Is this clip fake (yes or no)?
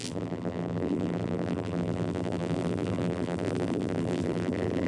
yes